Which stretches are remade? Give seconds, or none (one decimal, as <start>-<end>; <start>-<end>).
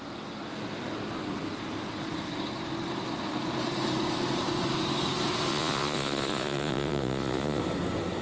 5.5-7.6